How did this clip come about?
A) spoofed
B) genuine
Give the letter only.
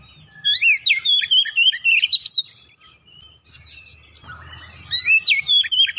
B